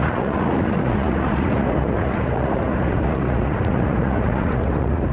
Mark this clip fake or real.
fake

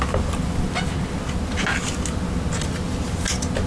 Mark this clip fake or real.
real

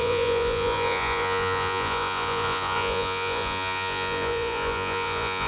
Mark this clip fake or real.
fake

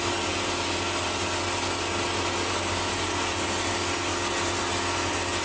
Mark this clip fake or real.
real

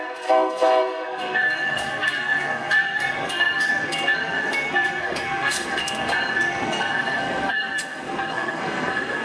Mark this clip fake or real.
fake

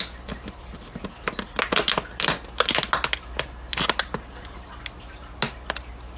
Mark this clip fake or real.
real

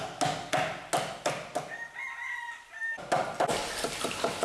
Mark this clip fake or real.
real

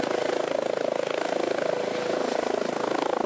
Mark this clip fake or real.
real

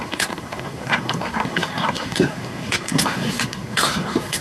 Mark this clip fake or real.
fake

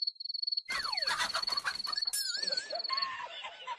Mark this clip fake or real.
real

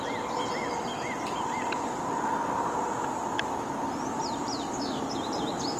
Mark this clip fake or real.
real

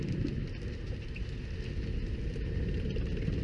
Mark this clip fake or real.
real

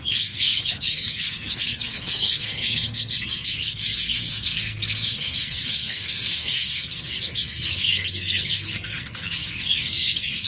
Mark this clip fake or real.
fake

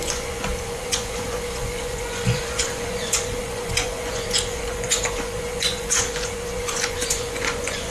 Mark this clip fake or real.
fake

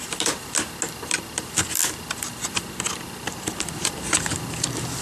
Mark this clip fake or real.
real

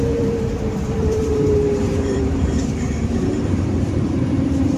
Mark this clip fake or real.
fake